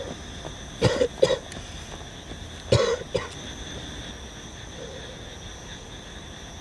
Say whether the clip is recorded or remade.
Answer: recorded